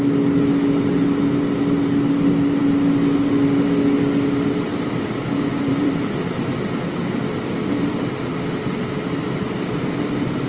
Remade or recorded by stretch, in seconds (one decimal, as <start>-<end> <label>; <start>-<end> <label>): 0.0-4.7 recorded; 4.7-6.2 remade; 6.2-10.5 recorded